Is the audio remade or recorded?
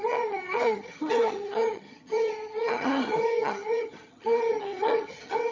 remade